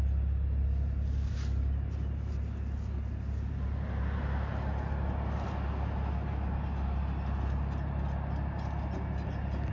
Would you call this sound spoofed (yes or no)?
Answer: no